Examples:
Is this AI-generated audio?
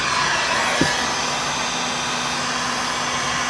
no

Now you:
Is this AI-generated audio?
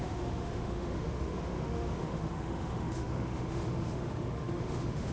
yes